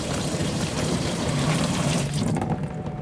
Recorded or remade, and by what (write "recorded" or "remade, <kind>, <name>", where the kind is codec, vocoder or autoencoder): remade, vocoder, BigVGAN v2